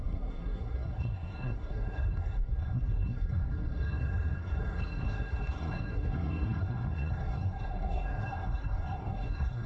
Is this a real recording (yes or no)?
no